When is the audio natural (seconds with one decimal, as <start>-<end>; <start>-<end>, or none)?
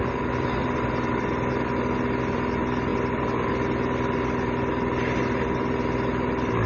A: 0.0-0.6; 1.5-2.9; 3.5-6.7